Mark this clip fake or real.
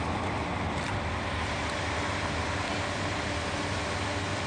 real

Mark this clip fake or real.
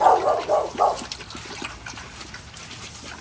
real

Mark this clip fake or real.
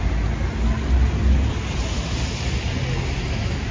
real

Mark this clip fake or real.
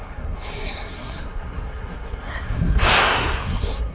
fake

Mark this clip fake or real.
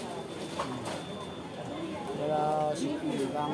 real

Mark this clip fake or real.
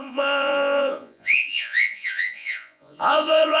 fake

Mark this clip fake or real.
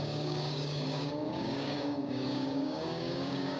fake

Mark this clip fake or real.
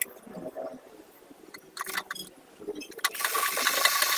real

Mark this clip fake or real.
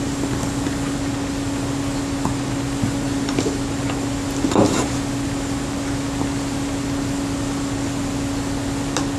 real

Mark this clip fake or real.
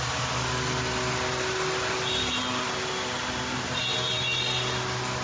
real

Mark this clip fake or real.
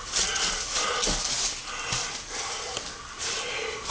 real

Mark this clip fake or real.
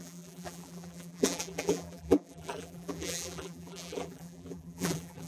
fake